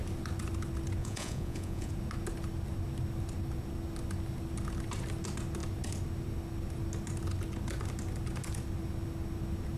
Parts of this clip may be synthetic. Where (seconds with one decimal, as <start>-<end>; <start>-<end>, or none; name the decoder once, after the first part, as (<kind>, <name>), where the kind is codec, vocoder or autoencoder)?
1.0-1.9 (vocoder, Vocos)